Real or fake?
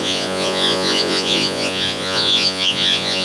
fake